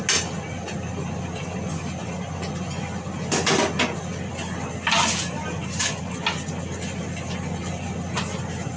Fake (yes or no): no